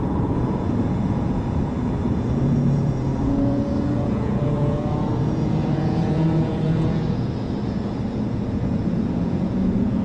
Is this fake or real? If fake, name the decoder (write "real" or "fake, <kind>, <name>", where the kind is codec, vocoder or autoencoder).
fake, vocoder, Vocos